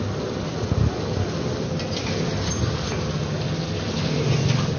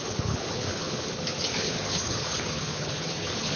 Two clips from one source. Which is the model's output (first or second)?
second